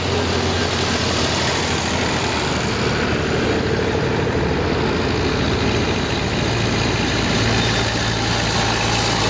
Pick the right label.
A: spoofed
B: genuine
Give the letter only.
B